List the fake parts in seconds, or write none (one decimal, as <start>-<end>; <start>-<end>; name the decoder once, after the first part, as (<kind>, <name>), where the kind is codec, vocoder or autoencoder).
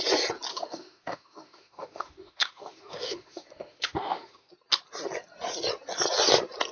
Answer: 0.5-4.5 (autoencoder, DAC-VAE)